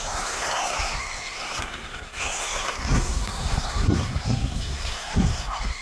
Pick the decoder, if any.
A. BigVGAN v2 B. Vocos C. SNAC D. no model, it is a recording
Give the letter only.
C